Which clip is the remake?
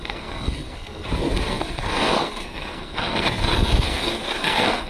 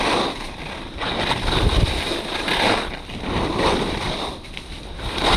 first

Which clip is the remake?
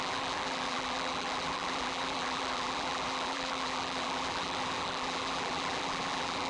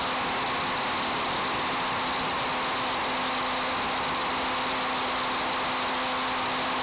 first